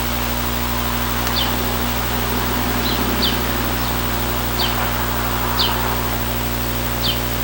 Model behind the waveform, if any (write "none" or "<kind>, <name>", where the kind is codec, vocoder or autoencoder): none